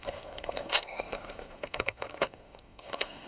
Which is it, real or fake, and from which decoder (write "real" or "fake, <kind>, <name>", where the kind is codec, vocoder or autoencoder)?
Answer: fake, codec, SNAC